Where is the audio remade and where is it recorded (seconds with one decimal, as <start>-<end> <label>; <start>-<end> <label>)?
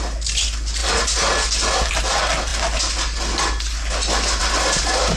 0.0-5.2 recorded